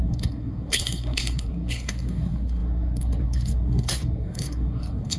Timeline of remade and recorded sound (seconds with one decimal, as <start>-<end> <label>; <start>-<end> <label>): 0.0-5.2 remade